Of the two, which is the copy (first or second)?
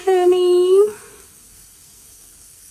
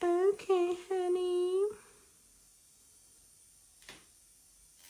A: first